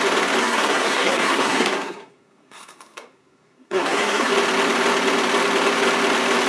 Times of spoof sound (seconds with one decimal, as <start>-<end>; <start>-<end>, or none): 0.4-4.3